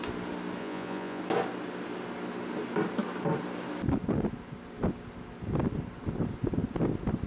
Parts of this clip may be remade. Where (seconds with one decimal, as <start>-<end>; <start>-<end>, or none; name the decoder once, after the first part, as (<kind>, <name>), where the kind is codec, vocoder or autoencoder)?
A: 0.6-1.2 (vocoder, Vocos)